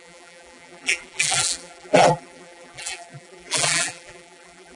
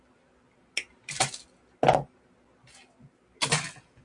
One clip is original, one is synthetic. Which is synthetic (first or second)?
first